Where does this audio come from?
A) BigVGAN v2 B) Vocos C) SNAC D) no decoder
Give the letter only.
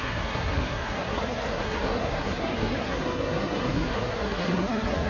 C